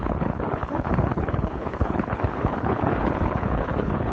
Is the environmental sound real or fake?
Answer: fake